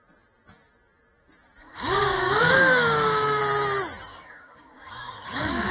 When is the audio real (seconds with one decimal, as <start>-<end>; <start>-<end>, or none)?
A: 0.0-1.6; 3.4-4.1